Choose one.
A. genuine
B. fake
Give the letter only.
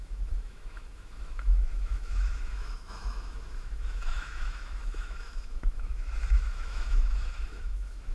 B